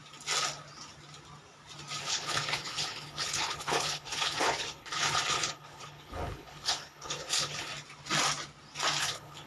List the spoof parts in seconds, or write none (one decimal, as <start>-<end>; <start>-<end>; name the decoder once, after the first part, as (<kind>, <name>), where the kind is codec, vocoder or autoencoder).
2.0-7.7 (codec, HILCodec); 9.0-9.5